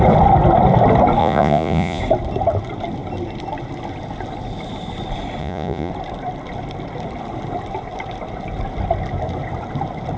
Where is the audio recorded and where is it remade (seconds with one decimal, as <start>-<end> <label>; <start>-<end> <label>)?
0.0-1.2 recorded; 1.2-2.0 remade; 2.0-5.4 recorded; 5.4-5.9 remade; 5.9-10.2 recorded

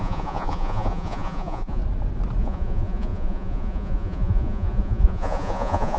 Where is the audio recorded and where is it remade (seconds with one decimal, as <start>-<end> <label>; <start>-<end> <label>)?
0.0-1.8 remade; 1.8-2.4 recorded; 2.4-6.0 remade

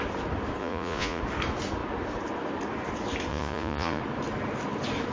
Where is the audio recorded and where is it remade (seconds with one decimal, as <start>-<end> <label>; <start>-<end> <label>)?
0.0-0.6 recorded; 0.6-1.2 remade; 1.2-3.3 recorded; 3.3-4.0 remade; 4.0-5.1 recorded